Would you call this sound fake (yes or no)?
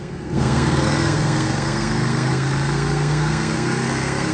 yes